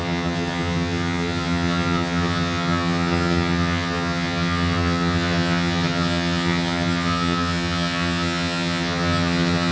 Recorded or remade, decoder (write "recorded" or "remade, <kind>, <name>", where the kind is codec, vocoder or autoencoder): remade, vocoder, HiFi-GAN